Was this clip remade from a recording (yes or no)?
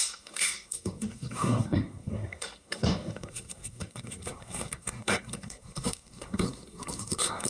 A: yes